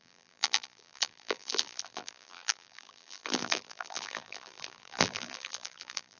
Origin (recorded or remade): remade